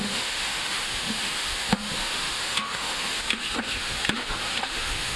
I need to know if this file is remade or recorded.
remade